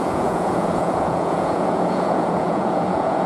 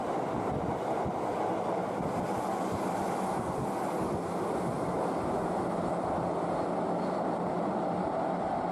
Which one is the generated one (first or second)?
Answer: first